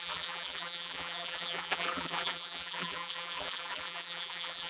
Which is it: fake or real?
fake